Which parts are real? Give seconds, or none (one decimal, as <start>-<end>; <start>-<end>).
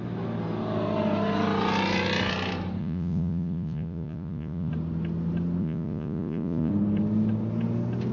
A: 0.0-2.8; 4.7-5.6; 6.7-8.1